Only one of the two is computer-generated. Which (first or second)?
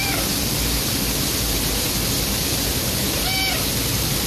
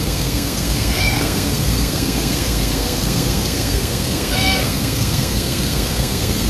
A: second